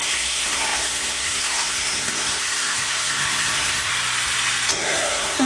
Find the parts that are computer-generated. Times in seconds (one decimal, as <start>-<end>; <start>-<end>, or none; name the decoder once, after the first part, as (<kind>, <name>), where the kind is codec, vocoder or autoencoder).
0.0-3.9 (codec, SNAC); 4.7-5.5